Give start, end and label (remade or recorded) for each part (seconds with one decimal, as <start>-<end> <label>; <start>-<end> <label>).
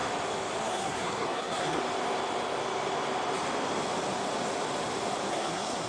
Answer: 0.0-0.6 recorded; 0.6-1.8 remade; 1.8-5.3 recorded; 5.3-5.9 remade